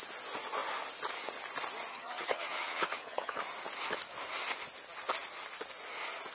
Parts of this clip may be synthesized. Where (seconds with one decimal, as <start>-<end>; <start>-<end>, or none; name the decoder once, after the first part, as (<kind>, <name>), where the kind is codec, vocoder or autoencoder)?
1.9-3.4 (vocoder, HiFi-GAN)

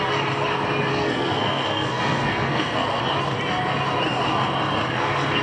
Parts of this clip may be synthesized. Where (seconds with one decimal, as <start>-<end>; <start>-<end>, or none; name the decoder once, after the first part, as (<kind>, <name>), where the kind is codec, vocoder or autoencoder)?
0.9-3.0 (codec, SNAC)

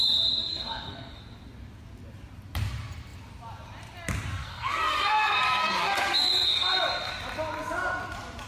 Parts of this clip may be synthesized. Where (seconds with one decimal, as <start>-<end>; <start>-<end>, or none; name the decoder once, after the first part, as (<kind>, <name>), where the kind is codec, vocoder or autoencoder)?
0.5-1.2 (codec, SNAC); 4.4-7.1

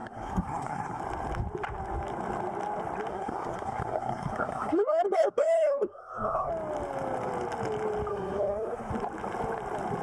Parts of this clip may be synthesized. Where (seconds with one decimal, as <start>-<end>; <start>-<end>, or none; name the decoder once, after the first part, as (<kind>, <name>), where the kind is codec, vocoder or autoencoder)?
0.0-1.0 (codec, SNAC); 3.1-6.5; 8.1-8.9

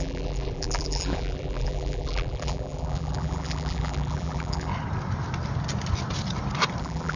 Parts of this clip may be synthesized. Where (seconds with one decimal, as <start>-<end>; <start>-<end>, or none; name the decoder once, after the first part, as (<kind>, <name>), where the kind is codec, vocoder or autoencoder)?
0.0-4.7 (vocoder, BigVGAN v2); 6.8-7.2